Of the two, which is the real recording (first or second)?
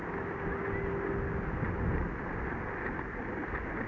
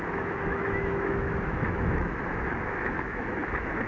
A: first